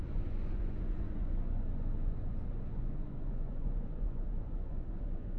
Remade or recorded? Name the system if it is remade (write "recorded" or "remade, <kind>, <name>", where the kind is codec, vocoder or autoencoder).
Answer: remade, vocoder, Vocos